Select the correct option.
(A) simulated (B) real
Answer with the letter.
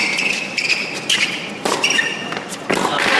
B